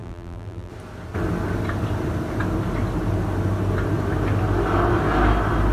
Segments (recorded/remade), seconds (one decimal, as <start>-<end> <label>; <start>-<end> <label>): 0.0-0.7 remade; 0.7-5.7 recorded